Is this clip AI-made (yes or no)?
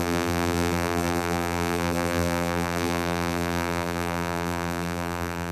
yes